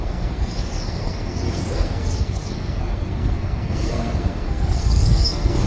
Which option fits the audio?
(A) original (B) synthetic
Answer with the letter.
B